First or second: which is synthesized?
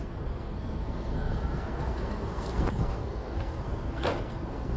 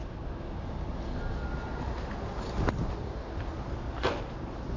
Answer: first